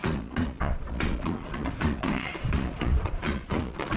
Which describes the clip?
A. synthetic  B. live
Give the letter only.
A